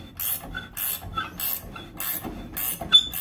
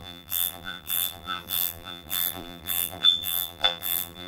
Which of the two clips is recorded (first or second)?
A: first